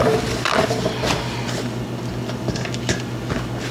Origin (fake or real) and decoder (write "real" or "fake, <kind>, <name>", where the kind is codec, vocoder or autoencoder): real